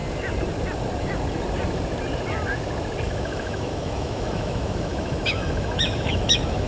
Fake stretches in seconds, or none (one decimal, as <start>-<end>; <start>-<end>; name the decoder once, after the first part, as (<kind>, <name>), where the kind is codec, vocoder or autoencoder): 3.0-6.7 (autoencoder, DAC-VAE)